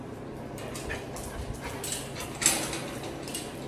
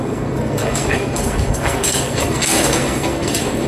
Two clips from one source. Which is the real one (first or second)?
first